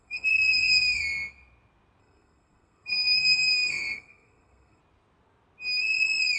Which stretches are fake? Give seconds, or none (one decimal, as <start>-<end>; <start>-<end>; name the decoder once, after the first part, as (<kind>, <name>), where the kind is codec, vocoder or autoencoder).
0.0-1.0 (codec, SNAC); 2.0-4.8